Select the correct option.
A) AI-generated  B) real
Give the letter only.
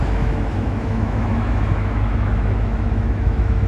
A